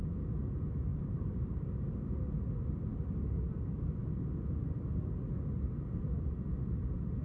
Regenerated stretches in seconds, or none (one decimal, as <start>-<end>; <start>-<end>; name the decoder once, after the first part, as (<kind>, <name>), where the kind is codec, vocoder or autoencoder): 0.9-1.6 (vocoder, BigVGAN v2)